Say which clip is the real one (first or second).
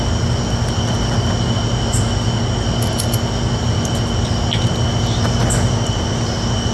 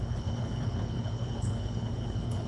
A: first